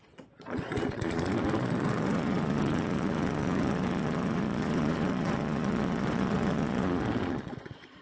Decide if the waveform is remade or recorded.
remade